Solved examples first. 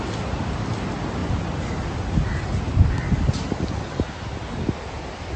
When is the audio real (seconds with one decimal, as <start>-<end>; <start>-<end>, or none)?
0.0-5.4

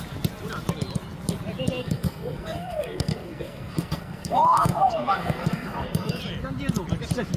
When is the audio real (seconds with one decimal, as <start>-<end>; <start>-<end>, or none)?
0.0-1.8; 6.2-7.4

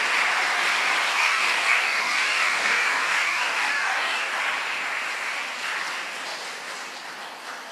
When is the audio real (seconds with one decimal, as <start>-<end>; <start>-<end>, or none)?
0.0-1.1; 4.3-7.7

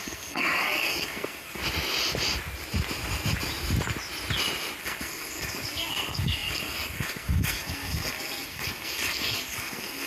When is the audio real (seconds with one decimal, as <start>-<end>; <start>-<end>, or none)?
1.6-4.8